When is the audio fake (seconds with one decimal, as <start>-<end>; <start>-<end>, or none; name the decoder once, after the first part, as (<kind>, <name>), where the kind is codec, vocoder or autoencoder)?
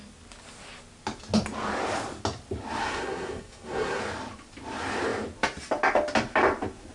2.8-4.0 (codec, SNAC)